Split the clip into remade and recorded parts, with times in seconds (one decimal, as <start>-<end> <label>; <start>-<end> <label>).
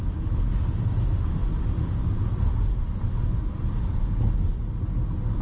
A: 0.0-5.4 recorded